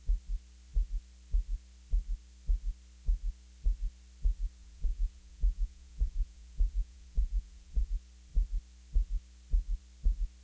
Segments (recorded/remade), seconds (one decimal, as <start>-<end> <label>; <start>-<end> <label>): 0.0-4.6 recorded; 4.6-7.9 remade; 7.9-10.4 recorded